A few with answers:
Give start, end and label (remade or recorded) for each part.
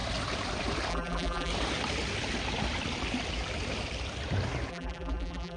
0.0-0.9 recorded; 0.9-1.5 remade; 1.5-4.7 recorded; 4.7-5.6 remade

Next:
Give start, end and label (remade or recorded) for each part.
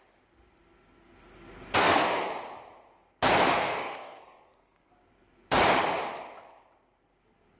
0.0-1.8 recorded; 1.8-2.3 remade; 2.3-3.5 recorded; 3.5-4.9 remade; 4.9-7.6 recorded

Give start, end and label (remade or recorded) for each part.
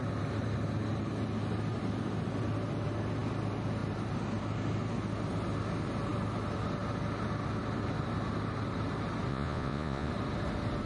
0.0-9.3 recorded; 9.3-10.1 remade; 10.1-10.9 recorded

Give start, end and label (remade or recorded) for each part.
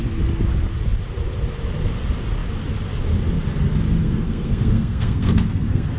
0.0-4.0 recorded; 4.0-6.0 remade